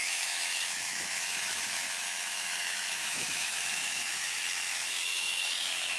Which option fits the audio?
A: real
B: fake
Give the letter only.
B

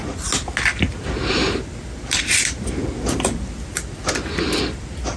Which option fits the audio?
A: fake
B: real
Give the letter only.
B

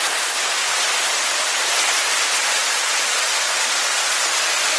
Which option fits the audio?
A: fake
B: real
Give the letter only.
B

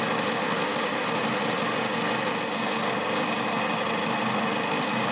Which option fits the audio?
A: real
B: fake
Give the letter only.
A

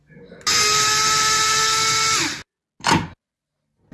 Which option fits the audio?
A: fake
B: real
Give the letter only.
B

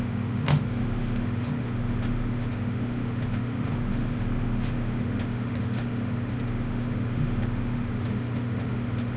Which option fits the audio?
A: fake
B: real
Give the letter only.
A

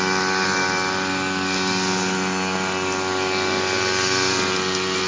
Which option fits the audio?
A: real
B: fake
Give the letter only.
A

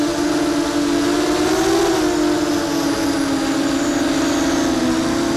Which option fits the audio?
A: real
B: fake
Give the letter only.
A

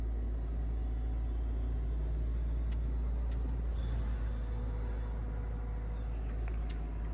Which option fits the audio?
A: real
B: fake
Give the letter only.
A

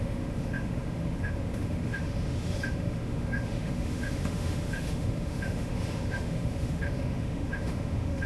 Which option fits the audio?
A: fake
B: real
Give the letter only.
A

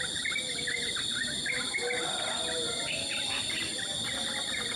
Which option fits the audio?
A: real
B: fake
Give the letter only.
A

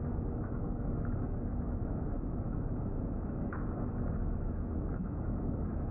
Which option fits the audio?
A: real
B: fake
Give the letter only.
B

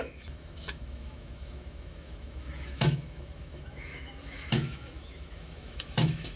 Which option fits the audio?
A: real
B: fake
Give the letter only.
B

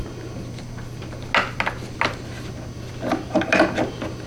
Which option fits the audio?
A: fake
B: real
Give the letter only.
B